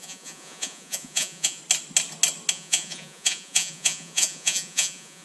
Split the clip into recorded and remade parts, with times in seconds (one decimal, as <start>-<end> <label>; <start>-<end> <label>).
0.0-1.6 remade; 1.6-2.5 recorded; 2.5-5.2 remade